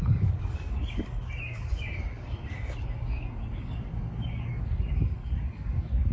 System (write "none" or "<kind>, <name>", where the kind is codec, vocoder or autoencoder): codec, DAC